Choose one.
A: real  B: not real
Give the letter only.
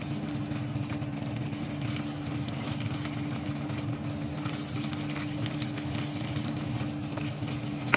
A